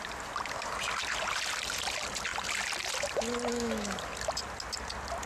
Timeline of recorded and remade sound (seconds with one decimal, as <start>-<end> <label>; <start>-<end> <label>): 0.0-3.5 recorded; 3.5-4.0 remade; 4.0-5.3 recorded